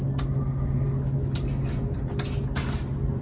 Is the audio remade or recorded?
recorded